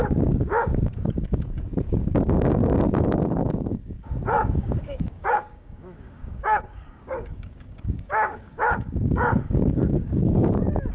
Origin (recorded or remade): remade